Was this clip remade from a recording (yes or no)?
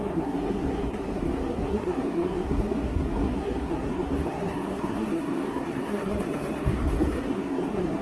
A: yes